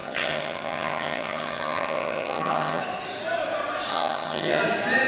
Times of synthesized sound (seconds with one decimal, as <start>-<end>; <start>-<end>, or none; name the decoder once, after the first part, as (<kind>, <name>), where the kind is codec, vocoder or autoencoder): 0.0-2.8 (vocoder, HiFi-GAN); 3.9-4.6